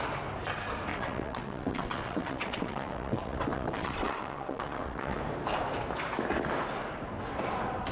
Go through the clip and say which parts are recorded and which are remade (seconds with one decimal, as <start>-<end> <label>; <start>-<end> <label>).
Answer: 0.0-0.9 recorded; 0.9-5.2 remade; 5.2-7.9 recorded